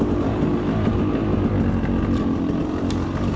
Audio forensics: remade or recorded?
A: recorded